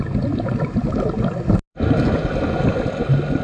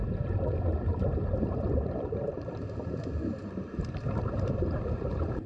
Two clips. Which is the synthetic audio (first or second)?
second